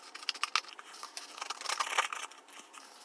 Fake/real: real